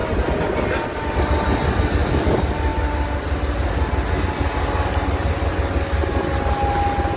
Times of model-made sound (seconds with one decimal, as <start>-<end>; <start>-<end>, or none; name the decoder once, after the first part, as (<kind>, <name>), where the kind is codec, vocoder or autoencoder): none